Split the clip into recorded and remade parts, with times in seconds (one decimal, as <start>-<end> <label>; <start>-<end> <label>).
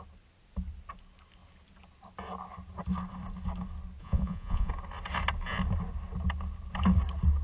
0.0-4.0 recorded; 4.0-4.7 remade; 4.7-7.4 recorded